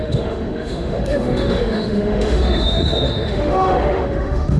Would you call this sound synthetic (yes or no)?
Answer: yes